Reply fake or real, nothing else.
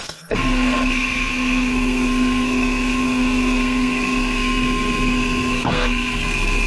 fake